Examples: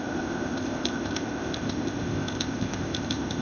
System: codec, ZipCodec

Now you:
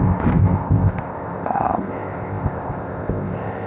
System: codec, ZipCodec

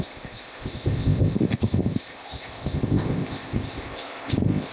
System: codec, ZipCodec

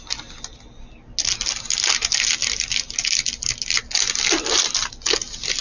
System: none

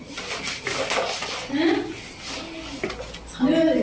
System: none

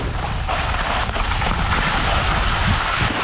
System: none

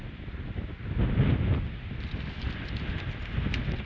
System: none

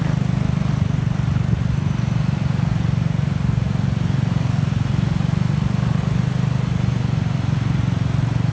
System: none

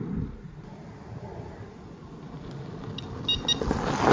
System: none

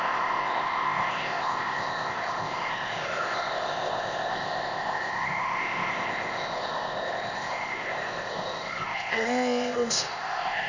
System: codec, ZipCodec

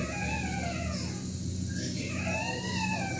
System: none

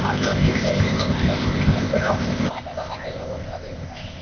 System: codec, ZipCodec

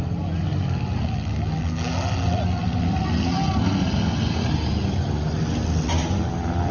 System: none